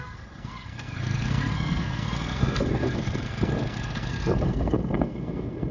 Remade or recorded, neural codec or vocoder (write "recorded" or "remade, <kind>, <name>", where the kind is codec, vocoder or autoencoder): remade, codec, SNAC